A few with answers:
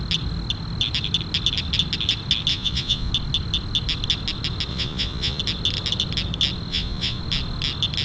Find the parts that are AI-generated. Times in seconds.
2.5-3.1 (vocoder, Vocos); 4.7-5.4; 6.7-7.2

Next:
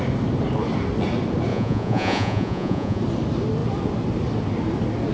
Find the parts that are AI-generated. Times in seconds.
1.5-3.0 (vocoder, Vocos)

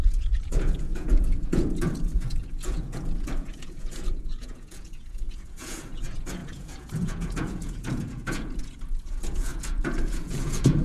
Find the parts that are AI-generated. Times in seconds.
0.0-10.8 (vocoder, Vocos)

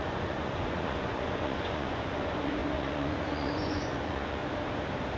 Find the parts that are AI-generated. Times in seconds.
0.0-4.4 (vocoder, Vocos)